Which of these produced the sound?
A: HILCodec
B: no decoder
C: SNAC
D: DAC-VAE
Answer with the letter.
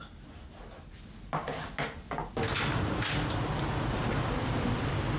B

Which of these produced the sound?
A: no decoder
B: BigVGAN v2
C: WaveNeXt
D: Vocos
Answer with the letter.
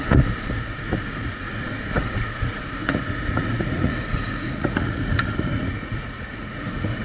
D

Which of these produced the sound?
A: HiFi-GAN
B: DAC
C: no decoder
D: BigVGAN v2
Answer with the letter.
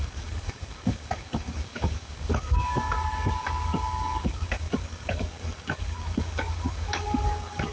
B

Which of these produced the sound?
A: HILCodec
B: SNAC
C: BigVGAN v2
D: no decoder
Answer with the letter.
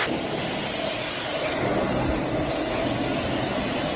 D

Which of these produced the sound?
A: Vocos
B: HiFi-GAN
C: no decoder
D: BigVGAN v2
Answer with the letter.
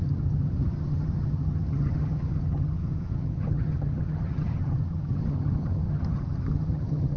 B